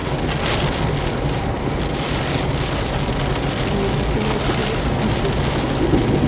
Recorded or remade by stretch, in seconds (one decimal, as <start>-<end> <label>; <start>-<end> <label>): 0.0-6.3 recorded